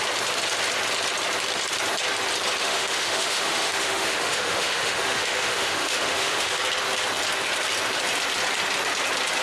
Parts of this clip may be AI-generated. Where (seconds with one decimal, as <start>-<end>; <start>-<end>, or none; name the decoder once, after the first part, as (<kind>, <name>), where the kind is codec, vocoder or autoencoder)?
2.6-6.6 (autoencoder, DAC-VAE)